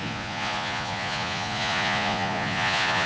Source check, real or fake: fake